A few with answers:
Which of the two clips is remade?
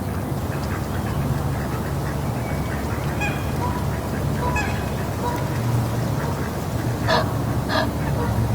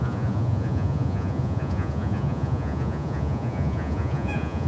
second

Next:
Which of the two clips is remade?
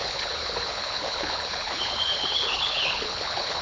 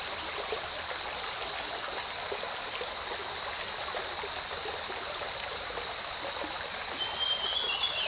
first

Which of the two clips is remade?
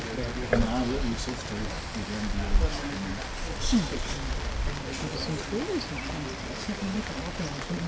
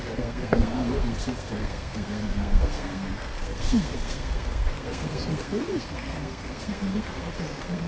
second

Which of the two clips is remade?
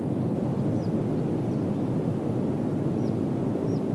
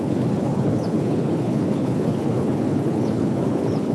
second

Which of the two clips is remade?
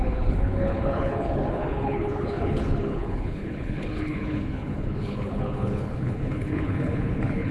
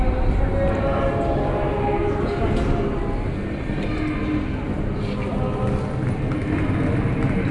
first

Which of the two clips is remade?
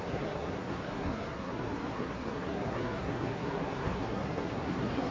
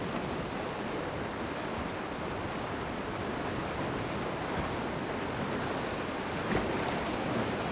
first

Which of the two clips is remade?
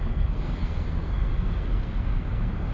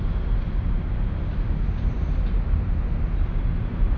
first